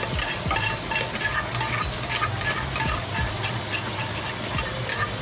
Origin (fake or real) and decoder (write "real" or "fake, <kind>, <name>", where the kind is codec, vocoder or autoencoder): real